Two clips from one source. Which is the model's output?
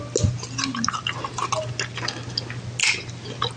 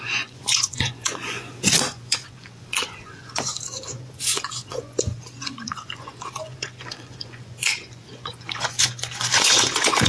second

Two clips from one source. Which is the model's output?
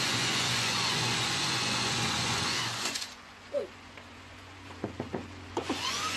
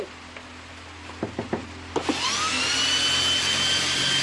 first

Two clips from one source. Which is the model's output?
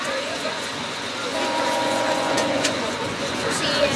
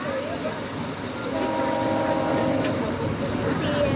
first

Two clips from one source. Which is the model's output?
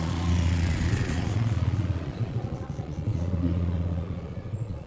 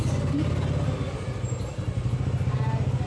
first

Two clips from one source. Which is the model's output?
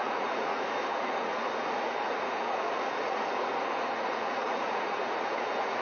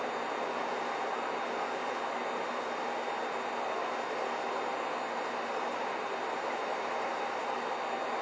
first